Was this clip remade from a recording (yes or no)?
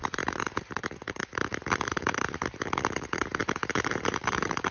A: yes